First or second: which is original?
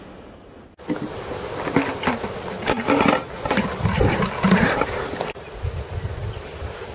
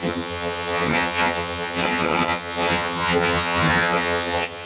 first